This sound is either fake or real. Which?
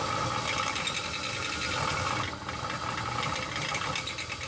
real